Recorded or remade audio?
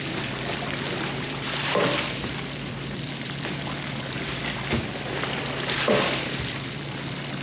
remade